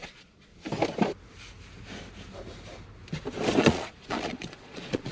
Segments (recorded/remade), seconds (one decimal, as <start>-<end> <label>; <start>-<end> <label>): 0.0-0.5 remade; 0.5-3.6 recorded; 3.6-5.1 remade